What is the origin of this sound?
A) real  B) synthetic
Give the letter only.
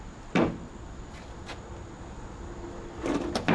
A